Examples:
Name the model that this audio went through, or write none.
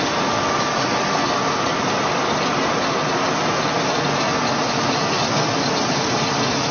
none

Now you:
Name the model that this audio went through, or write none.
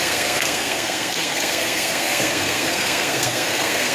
codec, SNAC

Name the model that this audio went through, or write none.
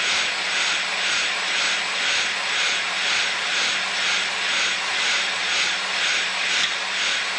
none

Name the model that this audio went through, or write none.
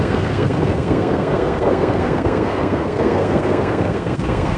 codec, SNAC